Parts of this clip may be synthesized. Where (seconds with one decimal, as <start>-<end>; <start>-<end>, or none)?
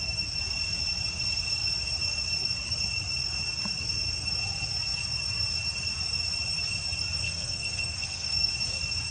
7.2-8.5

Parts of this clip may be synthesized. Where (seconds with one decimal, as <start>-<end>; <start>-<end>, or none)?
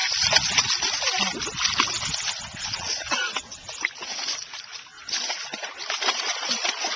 2.6-3.6; 6.1-7.0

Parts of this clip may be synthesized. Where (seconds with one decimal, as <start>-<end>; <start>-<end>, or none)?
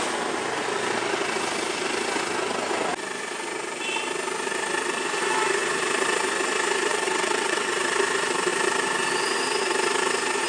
6.9-7.7